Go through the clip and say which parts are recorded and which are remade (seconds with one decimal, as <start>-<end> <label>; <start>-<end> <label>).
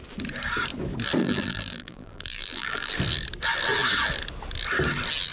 0.0-1.2 recorded; 1.2-2.9 remade; 2.9-5.3 recorded